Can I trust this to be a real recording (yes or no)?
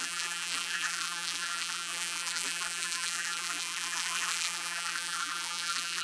no